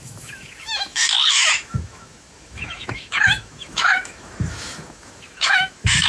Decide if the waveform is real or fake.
fake